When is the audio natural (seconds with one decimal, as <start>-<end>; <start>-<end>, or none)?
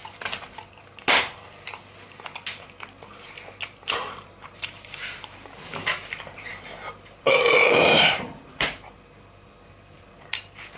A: 0.0-4.1